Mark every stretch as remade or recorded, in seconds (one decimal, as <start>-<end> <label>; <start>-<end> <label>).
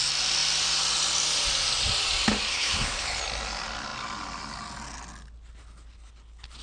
0.0-2.5 recorded; 2.5-3.2 remade; 3.2-6.6 recorded